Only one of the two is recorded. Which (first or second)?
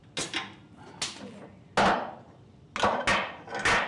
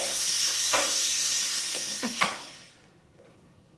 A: first